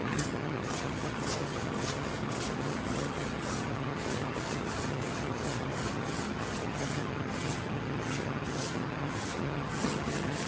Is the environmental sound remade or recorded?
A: remade